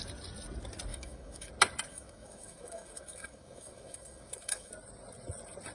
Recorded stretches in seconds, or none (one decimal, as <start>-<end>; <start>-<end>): 0.0-0.9; 1.5-1.9; 4.7-5.7